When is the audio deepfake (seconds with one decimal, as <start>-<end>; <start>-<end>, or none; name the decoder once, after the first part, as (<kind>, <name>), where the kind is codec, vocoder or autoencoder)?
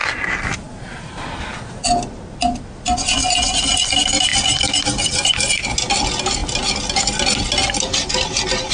none